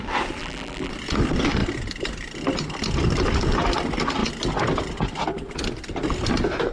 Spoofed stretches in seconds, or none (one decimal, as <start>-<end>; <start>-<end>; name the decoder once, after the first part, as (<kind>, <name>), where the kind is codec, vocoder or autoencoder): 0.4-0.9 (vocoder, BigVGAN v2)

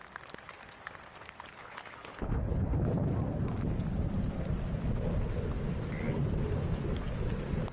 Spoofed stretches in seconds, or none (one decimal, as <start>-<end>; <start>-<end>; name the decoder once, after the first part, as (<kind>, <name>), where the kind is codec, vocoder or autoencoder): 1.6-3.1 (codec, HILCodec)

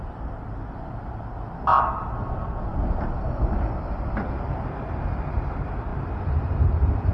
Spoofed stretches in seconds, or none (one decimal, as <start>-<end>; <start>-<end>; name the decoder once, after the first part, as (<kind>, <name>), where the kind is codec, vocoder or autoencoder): 5.9-7.1 (vocoder, BigVGAN v2)